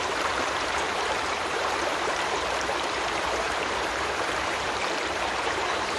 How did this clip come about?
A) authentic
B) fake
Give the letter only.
B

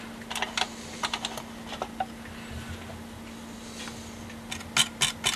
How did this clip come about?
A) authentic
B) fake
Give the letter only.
A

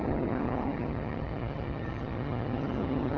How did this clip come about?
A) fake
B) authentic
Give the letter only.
A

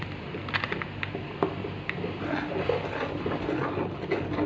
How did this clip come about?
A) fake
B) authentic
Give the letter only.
B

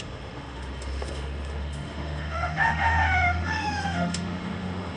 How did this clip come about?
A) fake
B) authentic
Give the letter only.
A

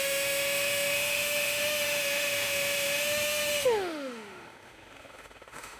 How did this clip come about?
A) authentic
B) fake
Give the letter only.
B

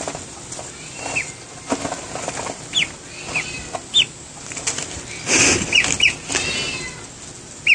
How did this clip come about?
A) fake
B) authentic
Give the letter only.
B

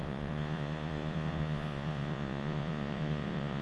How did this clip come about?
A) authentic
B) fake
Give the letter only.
B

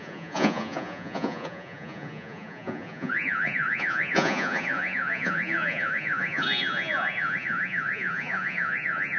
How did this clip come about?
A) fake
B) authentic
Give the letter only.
A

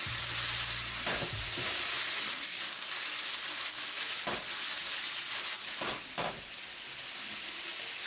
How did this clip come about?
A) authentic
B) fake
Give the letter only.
A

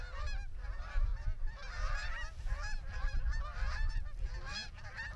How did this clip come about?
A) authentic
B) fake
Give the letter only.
A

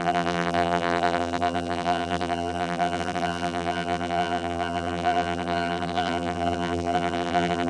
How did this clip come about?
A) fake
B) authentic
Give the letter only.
A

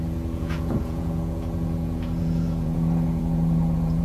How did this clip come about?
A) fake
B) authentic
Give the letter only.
A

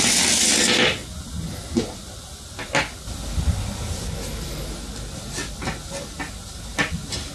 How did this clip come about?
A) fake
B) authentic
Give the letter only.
B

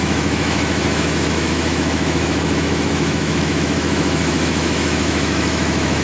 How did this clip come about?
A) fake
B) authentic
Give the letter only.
A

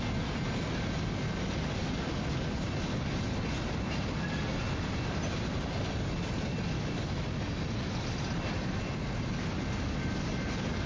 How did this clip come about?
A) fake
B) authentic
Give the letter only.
B